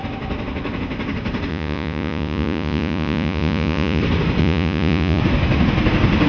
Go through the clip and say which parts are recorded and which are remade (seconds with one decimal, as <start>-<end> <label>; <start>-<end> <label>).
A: 0.0-1.5 recorded; 1.5-4.0 remade; 4.0-4.4 recorded; 4.4-5.2 remade; 5.2-6.3 recorded